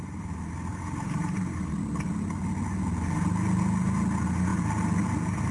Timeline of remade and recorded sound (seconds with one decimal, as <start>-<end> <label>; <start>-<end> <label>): 0.0-0.7 recorded; 0.7-1.8 remade; 1.8-5.5 recorded